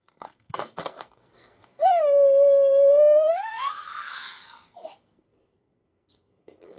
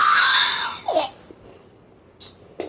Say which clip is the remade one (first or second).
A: first